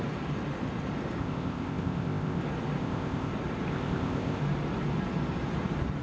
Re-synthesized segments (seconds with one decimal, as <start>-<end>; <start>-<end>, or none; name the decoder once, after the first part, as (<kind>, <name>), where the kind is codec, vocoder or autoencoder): 1.2-2.4 (codec, ZipCodec); 2.8-3.3; 3.7-4.4